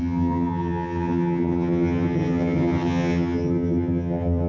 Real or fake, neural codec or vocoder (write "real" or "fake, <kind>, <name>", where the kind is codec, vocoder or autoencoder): fake, vocoder, HiFi-GAN